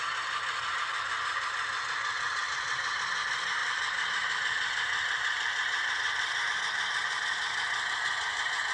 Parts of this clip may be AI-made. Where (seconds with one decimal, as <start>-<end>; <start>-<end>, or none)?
3.6-6.5